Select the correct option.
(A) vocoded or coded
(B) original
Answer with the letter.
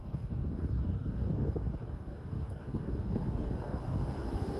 A